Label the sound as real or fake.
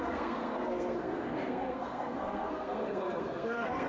fake